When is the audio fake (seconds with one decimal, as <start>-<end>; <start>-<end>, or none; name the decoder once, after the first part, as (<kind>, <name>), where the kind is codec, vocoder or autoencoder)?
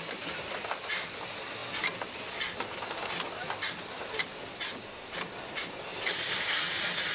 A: 5.9-6.4 (vocoder, BigVGAN v2)